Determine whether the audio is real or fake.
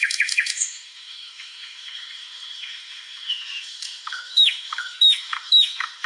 fake